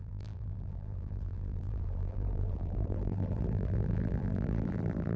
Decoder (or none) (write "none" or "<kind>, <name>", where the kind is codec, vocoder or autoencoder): vocoder, BigVGAN v2